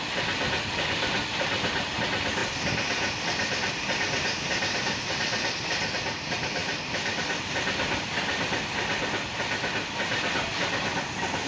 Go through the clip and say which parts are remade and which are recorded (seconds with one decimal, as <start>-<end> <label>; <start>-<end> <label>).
0.0-11.5 recorded